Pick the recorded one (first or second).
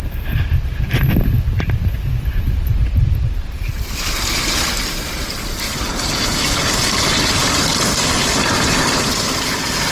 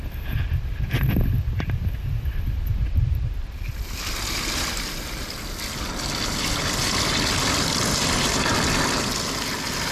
second